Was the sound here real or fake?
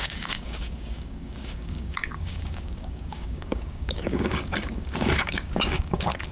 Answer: fake